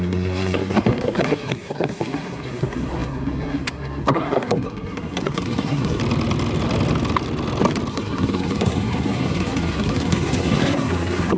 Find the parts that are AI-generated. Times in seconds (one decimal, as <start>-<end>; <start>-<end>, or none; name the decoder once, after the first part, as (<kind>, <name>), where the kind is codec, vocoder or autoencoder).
0.0-6.0 (codec, SNAC); 7.9-11.4